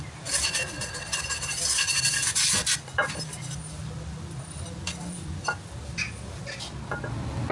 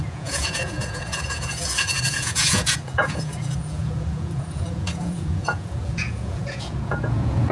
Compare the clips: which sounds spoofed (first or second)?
second